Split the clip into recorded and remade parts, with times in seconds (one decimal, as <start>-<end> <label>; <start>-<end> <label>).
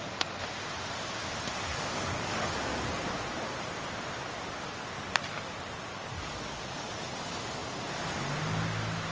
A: 0.0-1.7 recorded; 1.7-2.7 remade; 2.7-5.9 recorded; 5.9-6.9 remade; 6.9-9.1 recorded